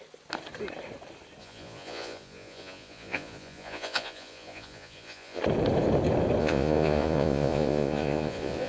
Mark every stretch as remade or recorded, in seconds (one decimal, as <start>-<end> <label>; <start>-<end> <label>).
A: 0.0-1.4 recorded; 1.4-5.4 remade; 5.4-6.4 recorded; 6.4-8.7 remade